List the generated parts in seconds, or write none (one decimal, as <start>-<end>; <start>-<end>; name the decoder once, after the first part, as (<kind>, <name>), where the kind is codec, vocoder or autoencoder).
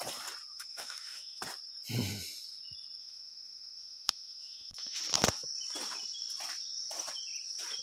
0.5-1.4 (autoencoder, DAC-VAE); 3.0-5.0